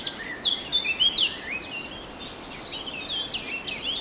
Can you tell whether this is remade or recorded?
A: recorded